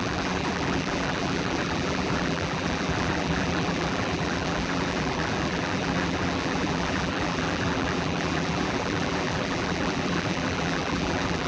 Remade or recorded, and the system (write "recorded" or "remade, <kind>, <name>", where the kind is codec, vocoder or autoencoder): remade, vocoder, BigVGAN v2